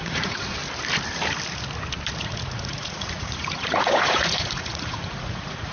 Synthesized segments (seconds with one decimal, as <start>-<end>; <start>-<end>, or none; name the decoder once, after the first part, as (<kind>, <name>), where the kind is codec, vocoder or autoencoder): 0.0-0.6 (vocoder, Vocos); 2.2-5.7